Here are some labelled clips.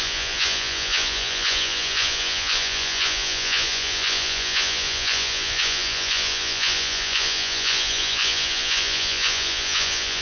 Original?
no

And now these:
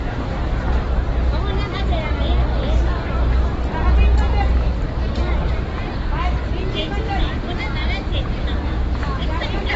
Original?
yes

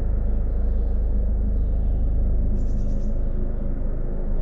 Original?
yes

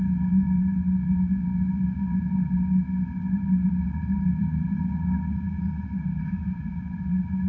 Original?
no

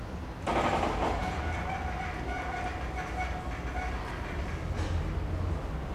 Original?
yes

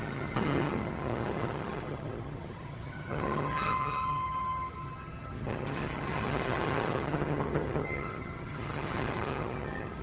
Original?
no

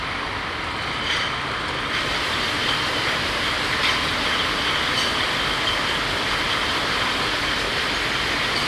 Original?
yes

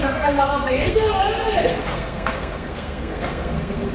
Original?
no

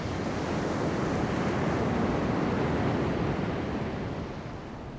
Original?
yes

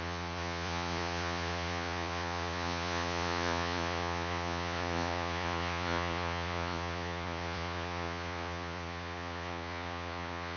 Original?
no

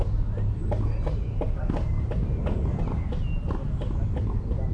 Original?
yes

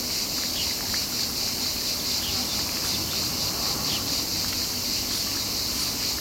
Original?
yes